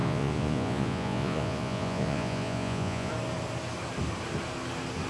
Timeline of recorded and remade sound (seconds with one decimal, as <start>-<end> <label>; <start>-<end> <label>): 0.0-3.1 remade; 3.1-5.1 recorded